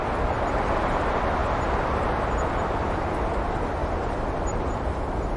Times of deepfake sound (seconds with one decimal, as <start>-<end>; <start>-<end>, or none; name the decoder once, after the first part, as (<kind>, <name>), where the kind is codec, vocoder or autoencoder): 3.8-4.9 (vocoder, BigVGAN v2)